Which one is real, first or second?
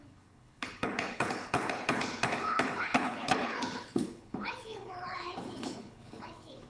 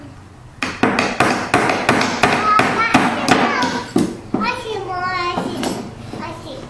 second